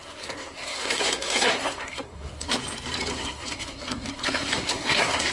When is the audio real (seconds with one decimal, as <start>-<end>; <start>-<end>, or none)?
2.5-3.1